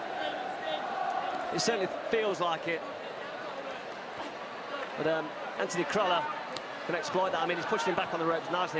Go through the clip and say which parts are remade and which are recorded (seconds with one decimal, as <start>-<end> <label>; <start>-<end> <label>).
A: 0.0-2.3 recorded; 2.3-2.8 remade; 2.8-8.8 recorded